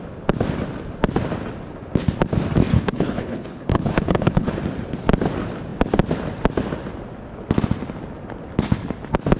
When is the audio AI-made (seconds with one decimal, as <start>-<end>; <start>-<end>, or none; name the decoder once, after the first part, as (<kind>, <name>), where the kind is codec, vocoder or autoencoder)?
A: 2.7-4.5 (codec, HILCodec)